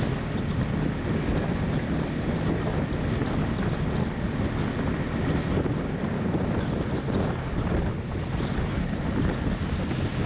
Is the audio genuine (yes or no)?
yes